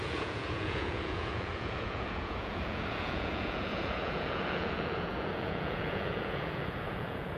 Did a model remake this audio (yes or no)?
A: yes